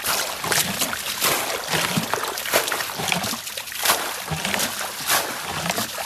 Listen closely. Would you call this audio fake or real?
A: real